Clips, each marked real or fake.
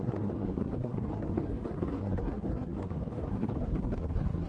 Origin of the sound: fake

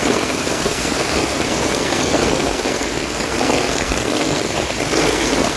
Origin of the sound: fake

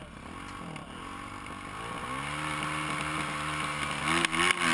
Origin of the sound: real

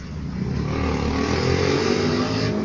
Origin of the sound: real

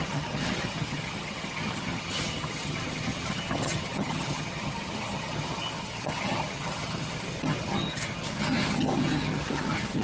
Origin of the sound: fake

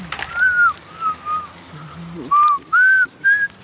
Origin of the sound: real